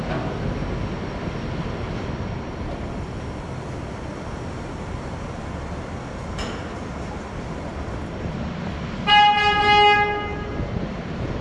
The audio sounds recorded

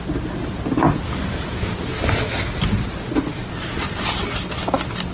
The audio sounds recorded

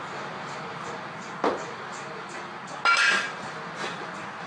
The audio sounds recorded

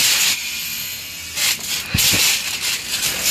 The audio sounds recorded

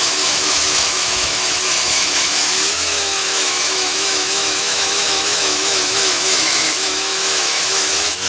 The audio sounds remade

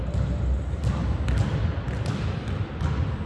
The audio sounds recorded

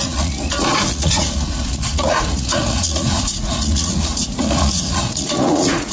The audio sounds remade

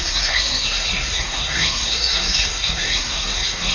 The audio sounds remade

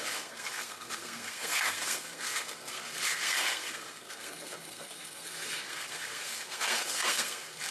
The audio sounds remade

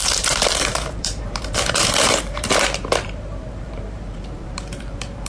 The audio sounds remade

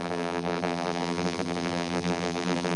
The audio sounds remade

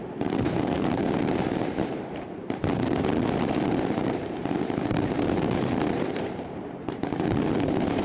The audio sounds remade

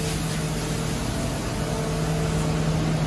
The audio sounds recorded